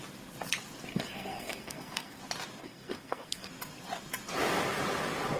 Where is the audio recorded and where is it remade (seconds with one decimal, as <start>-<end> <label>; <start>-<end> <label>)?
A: 0.0-0.9 recorded; 0.9-2.2 remade; 2.2-2.6 recorded; 2.6-3.5 remade; 3.5-5.4 recorded